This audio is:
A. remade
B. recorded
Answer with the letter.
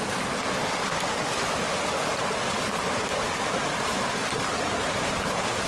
B